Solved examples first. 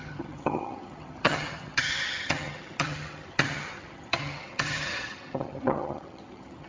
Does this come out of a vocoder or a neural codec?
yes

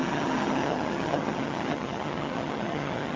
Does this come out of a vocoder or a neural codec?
yes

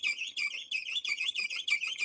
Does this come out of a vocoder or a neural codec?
yes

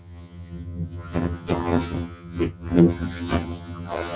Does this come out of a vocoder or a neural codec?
yes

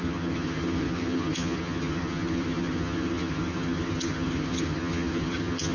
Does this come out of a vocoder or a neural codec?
yes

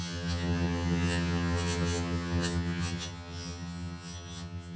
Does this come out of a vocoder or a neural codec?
yes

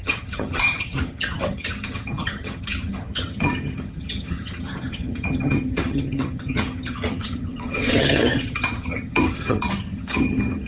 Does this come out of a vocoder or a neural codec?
yes